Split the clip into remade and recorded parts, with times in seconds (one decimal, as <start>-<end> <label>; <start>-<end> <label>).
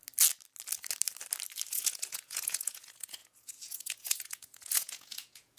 0.0-1.7 recorded; 1.7-5.6 remade